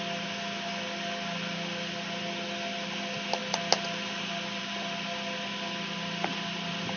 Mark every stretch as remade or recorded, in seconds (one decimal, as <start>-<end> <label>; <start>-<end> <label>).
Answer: 0.0-7.0 recorded